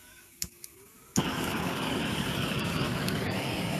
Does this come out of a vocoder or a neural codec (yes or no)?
yes